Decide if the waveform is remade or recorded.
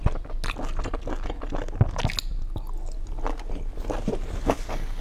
recorded